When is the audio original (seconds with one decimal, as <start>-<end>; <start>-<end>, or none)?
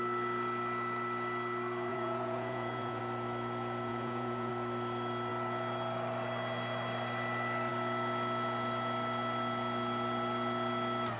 0.0-1.9; 3.0-3.9; 4.5-11.2